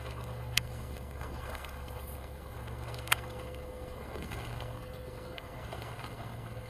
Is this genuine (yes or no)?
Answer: no